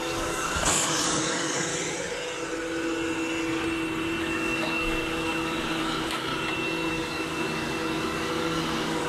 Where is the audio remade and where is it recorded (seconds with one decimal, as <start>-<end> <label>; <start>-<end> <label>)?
0.0-1.7 remade; 1.7-4.2 recorded; 4.2-6.3 remade; 6.3-6.9 recorded; 6.9-9.1 remade